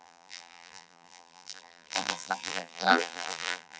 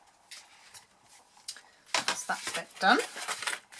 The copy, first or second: first